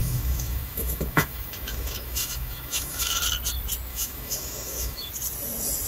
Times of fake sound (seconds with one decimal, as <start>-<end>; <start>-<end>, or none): 0.0-3.2; 3.9-5.1